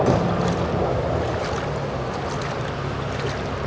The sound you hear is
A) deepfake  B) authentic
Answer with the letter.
B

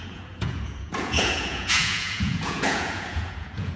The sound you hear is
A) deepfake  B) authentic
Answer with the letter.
A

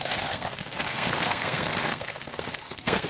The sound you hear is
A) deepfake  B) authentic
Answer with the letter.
A